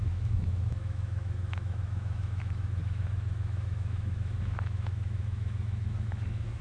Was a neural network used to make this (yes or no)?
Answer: yes